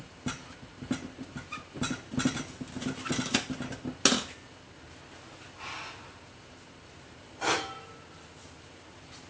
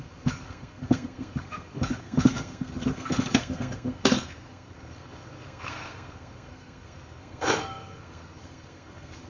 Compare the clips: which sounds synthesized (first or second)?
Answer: second